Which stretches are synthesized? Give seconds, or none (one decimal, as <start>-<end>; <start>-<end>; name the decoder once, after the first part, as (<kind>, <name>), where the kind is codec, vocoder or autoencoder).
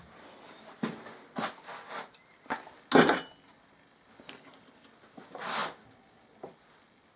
none